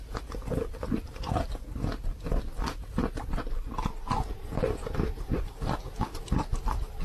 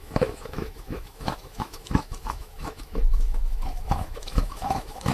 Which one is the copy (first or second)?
second